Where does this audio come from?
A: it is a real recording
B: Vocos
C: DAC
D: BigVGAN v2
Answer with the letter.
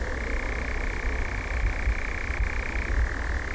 A